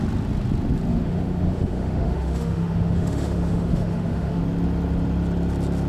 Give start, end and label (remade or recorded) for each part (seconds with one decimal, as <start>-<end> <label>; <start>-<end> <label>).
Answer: 0.0-0.9 recorded; 0.9-4.4 remade; 4.4-5.9 recorded